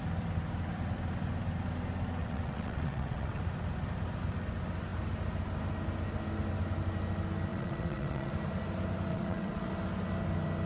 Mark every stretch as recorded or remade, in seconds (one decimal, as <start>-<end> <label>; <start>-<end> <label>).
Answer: 0.0-2.2 recorded; 2.2-3.4 remade; 3.4-7.5 recorded; 7.5-8.3 remade; 8.3-9.1 recorded; 9.1-9.7 remade; 9.7-10.7 recorded